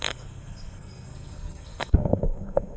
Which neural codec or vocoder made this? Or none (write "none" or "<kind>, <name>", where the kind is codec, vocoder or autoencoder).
codec, SNAC